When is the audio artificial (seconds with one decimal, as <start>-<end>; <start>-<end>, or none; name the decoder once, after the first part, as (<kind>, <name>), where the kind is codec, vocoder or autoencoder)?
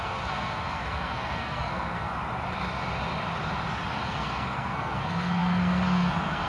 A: 0.0-2.1 (codec, SNAC); 4.1-6.5